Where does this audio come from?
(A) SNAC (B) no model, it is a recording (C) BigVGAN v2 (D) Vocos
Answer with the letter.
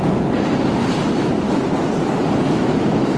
B